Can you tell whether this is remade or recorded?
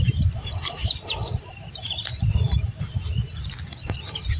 remade